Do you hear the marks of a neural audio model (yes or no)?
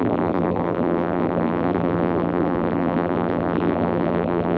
yes